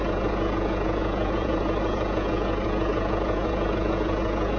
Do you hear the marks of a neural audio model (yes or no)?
yes